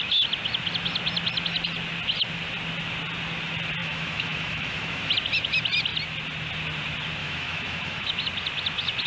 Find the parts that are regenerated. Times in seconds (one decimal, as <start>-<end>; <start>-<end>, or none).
3.8-5.1; 7.2-8.1